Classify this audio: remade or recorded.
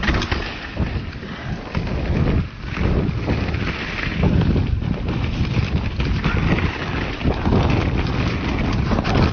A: recorded